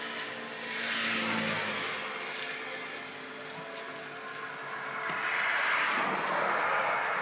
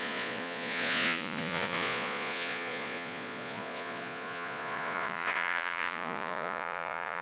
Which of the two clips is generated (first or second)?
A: second